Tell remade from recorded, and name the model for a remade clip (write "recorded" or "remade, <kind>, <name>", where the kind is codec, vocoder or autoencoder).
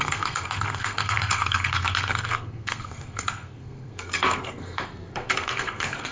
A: remade, codec, SNAC